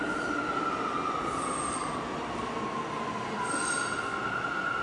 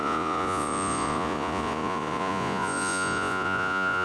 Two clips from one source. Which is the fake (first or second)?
second